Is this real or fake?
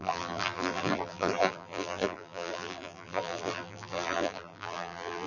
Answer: fake